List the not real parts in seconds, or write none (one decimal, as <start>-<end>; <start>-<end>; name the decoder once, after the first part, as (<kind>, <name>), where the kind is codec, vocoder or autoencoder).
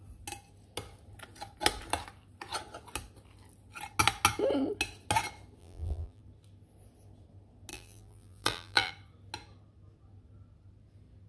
5.6-6.2 (vocoder, BigVGAN v2); 7.7-8.9